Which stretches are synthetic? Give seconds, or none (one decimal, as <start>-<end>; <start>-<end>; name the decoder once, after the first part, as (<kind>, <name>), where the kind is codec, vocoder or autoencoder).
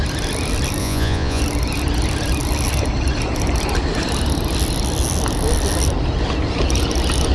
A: 0.8-1.4 (vocoder, Vocos)